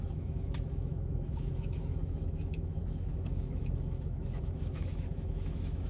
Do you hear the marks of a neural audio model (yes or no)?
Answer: yes